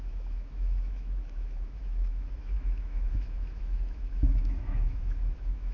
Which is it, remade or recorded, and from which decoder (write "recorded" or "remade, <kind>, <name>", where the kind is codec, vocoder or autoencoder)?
remade, autoencoder, DAC-VAE